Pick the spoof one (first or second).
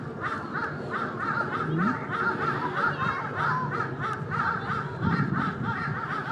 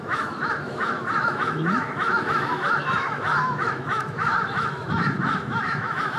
second